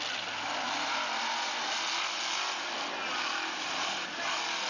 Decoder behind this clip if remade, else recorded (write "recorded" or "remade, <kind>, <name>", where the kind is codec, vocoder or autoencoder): recorded